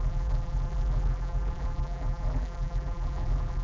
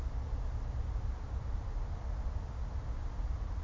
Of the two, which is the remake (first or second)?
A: first